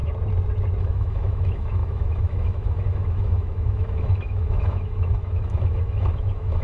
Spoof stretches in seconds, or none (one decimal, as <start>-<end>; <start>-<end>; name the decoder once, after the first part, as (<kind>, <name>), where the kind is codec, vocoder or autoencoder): 0.8-6.6 (autoencoder, DAC-VAE)